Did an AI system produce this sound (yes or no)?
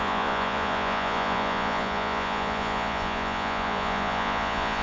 yes